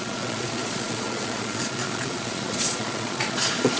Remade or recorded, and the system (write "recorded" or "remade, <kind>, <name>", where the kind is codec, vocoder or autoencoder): remade, vocoder, Vocos